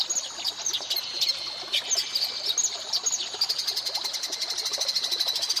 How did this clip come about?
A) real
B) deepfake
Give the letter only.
A